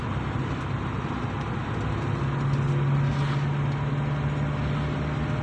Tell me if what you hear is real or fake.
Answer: real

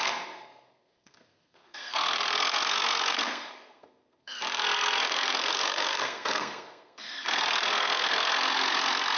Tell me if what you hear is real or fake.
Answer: fake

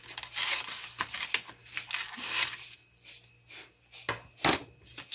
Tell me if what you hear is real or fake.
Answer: real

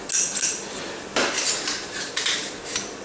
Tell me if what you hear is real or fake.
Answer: real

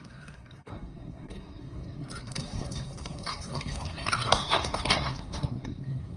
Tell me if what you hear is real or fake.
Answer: fake